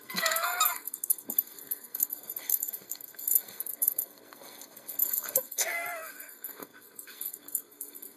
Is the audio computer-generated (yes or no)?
yes